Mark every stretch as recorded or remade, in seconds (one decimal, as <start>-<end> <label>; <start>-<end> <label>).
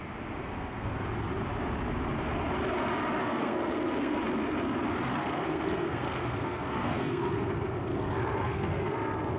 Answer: 0.0-0.4 recorded; 0.4-1.0 remade; 1.0-3.2 recorded; 3.2-4.2 remade; 4.2-5.1 recorded; 5.1-9.4 remade